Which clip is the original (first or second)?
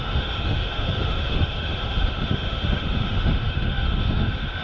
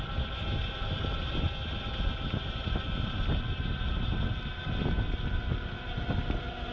second